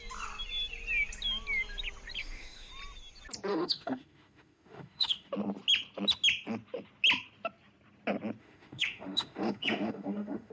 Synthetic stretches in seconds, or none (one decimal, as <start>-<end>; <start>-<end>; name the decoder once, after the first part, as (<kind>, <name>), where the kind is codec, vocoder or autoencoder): 2.2-2.7 (autoencoder, DAC-VAE); 3.5-5.3; 8.4-10.5

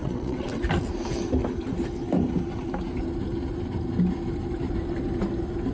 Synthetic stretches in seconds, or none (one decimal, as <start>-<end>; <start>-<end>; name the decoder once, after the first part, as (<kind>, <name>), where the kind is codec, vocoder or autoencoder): 0.0-0.6 (vocoder, WaveNeXt)

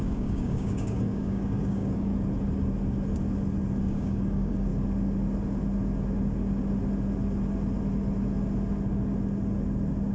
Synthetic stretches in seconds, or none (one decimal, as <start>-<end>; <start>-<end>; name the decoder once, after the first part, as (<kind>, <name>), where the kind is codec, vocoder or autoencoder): 0.0-2.1 (codec, DAC); 3.8-4.7